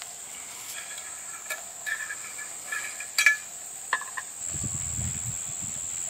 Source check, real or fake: real